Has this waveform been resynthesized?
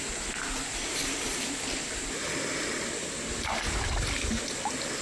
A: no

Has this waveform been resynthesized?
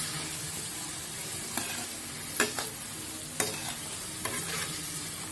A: no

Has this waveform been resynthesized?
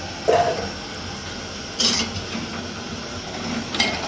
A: no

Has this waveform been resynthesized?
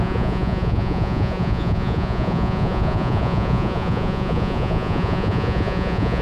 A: yes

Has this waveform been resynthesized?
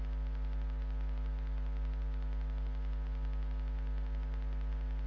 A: no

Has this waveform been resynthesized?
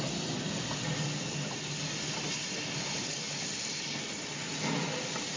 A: no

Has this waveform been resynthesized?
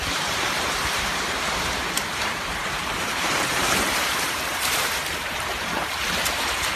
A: yes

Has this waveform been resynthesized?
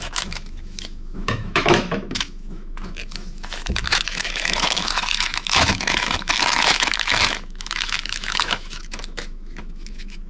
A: yes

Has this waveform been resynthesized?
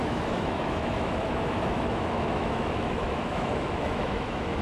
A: yes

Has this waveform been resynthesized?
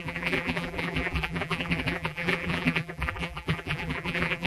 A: yes